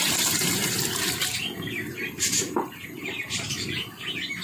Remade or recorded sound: remade